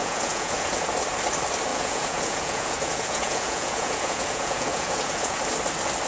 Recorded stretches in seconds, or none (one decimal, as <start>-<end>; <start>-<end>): 0.8-1.7; 5.4-6.1